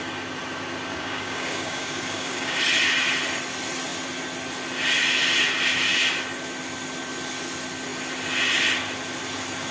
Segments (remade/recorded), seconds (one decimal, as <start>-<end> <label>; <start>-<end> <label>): 0.0-0.9 recorded; 0.9-2.6 remade; 2.6-9.7 recorded